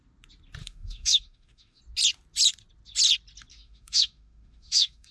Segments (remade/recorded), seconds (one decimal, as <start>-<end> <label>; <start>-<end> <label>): 0.0-0.6 recorded; 0.6-1.8 remade; 1.8-3.5 recorded; 3.5-5.1 remade